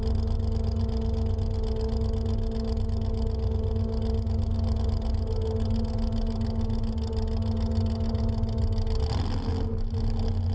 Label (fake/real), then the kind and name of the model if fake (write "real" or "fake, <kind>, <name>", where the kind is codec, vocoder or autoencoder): real